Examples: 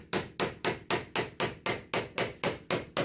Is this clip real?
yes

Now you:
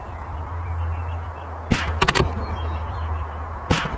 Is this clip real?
yes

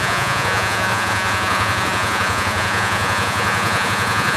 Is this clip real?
no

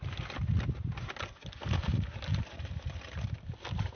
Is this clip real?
yes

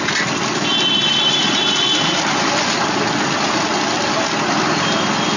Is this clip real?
yes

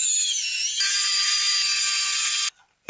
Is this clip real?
yes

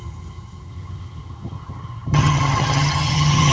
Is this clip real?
no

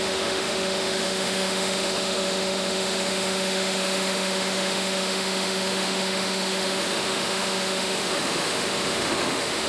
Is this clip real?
no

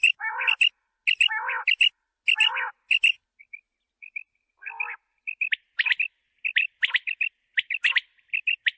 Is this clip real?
yes